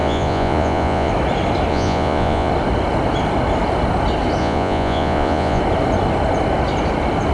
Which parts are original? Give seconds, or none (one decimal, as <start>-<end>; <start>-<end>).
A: 1.1-1.7; 2.5-4.4; 5.6-7.3